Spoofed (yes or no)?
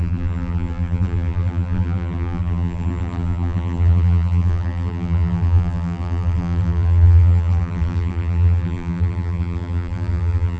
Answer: yes